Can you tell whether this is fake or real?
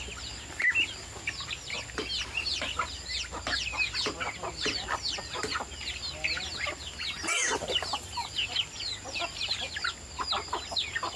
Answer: real